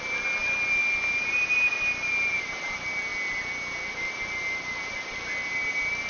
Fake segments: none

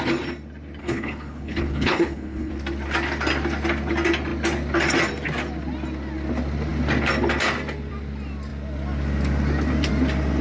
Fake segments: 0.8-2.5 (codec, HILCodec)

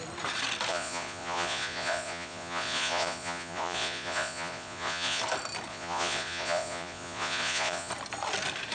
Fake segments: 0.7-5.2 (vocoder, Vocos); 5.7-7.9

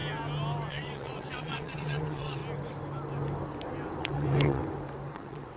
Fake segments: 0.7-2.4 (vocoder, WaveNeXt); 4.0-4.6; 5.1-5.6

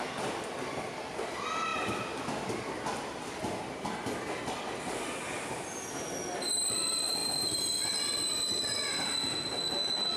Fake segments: 7.2-7.8 (vocoder, BigVGAN v2)